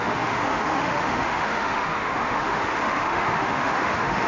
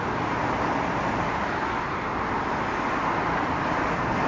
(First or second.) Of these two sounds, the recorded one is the second